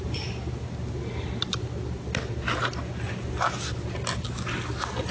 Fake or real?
real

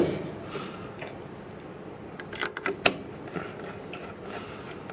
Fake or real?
real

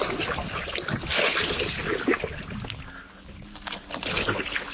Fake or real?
real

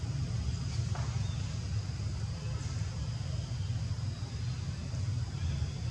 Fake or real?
real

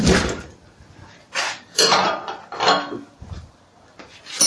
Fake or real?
fake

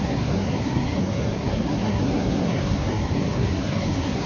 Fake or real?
fake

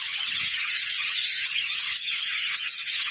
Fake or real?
fake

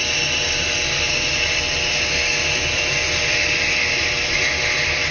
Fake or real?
real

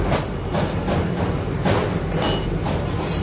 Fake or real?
real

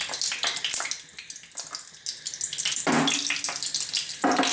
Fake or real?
real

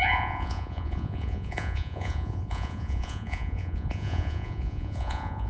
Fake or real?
fake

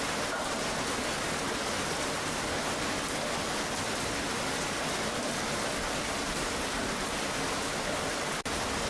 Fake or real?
real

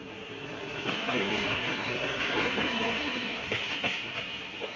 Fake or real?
fake